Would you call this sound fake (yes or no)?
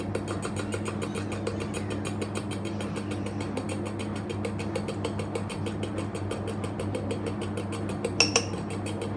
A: no